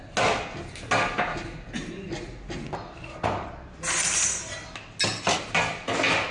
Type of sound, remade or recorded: recorded